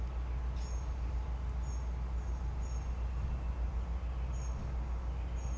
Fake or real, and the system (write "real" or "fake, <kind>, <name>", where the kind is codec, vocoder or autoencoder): real